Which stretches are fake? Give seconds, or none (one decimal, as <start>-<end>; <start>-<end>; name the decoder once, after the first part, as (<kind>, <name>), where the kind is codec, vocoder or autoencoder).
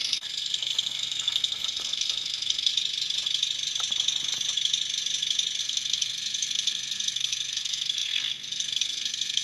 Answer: 0.0-2.7 (codec, SNAC); 5.6-9.4